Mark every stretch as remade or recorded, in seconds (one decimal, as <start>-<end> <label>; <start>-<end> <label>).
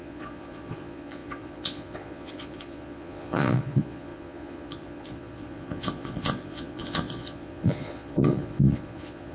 0.0-9.3 remade